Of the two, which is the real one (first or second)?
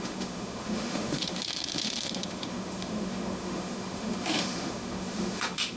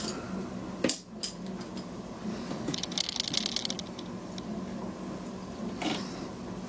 second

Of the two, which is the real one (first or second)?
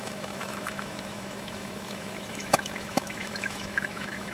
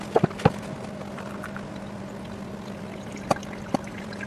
second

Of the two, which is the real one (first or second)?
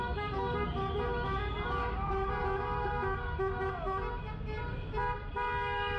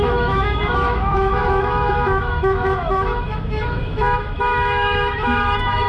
first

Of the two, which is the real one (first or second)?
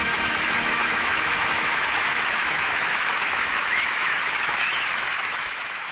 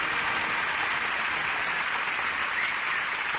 second